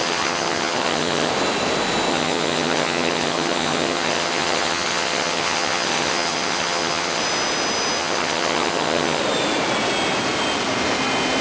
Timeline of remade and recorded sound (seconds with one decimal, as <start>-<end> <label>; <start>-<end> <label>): 0.0-1.3 remade; 1.3-2.1 recorded; 2.1-7.2 remade; 7.2-8.0 recorded; 8.0-9.2 remade; 9.2-11.4 recorded